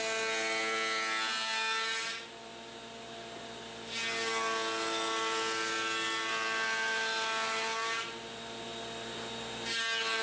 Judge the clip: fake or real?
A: real